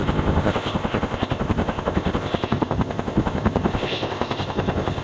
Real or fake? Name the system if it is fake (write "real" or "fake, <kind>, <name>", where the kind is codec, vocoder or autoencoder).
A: fake, codec, ZipCodec